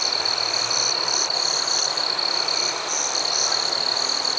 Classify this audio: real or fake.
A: real